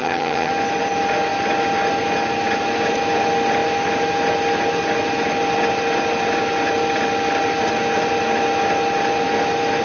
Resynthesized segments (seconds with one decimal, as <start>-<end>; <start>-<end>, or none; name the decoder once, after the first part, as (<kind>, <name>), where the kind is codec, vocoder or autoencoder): 0.0-0.5 (vocoder, HiFi-GAN)